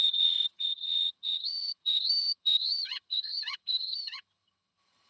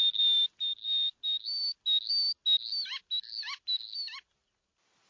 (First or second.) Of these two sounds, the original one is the second